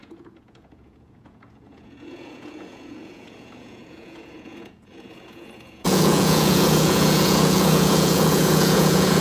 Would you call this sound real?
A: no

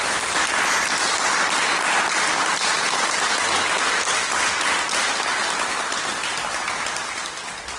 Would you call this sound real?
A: yes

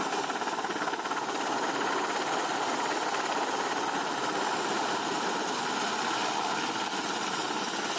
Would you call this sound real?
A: yes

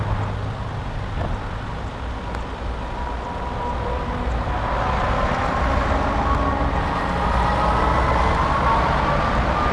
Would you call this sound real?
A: yes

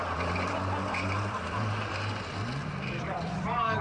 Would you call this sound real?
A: yes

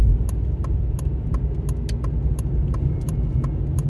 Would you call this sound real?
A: yes